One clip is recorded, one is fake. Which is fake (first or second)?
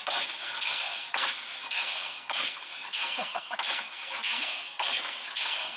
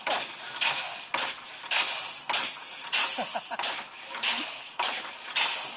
first